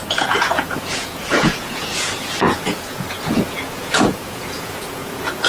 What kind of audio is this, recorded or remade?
remade